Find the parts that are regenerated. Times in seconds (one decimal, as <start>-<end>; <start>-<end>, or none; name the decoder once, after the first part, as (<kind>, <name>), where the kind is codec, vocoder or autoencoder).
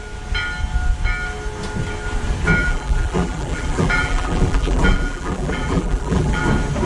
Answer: 2.6-6.4 (vocoder, BigVGAN v2)